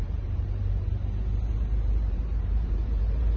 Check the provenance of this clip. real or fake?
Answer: fake